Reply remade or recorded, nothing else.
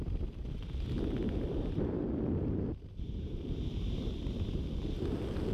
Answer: remade